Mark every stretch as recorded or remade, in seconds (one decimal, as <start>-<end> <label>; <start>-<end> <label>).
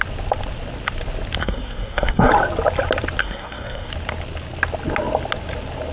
0.0-1.4 recorded; 1.4-2.3 remade; 2.3-3.2 recorded; 3.2-3.9 remade; 3.9-5.9 recorded